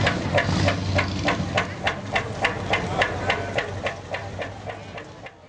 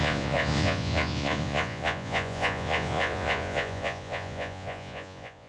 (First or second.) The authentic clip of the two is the first